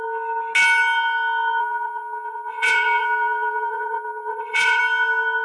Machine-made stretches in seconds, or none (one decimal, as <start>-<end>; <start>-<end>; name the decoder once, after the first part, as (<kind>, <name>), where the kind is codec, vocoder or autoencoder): 1.6-4.8 (vocoder, Vocos)